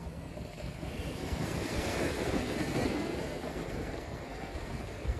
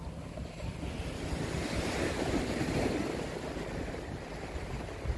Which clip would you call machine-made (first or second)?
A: first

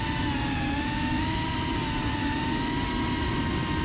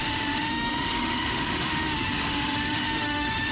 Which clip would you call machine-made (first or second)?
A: second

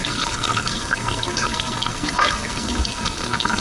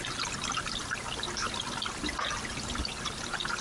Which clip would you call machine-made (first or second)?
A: first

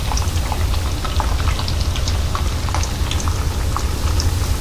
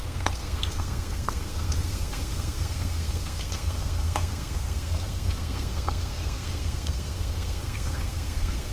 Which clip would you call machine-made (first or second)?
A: second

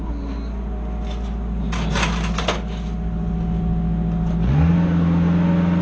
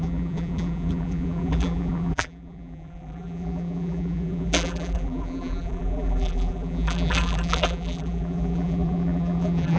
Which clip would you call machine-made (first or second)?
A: second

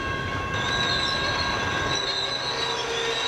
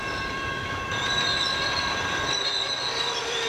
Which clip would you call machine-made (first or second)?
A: second